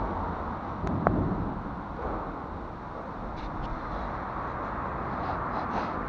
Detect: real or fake real